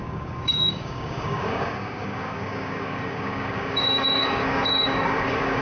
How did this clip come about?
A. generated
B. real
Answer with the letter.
A